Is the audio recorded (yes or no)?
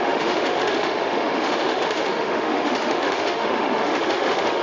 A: no